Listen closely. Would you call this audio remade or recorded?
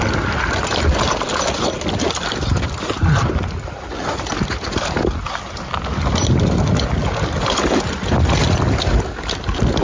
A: recorded